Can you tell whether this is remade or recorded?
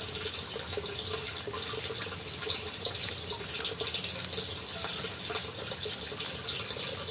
recorded